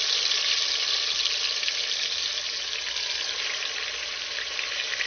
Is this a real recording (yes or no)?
yes